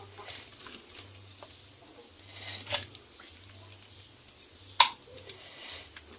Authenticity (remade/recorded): recorded